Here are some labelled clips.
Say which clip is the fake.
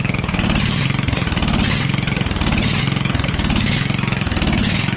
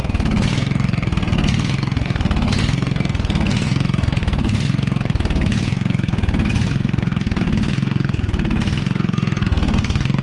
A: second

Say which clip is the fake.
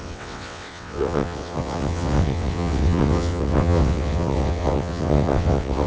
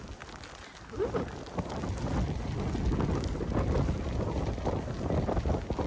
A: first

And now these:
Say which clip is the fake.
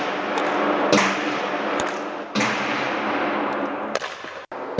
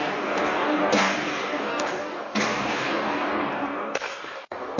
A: second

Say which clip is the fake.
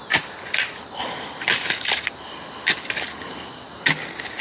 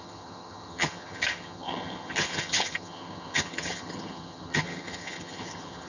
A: second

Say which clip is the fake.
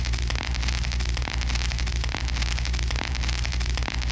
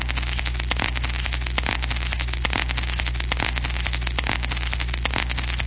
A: first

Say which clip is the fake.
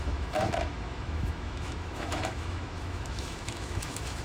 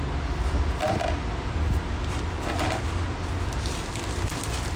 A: first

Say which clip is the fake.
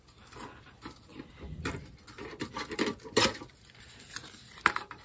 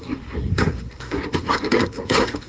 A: second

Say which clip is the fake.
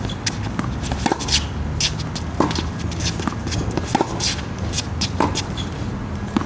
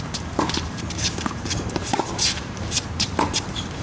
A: second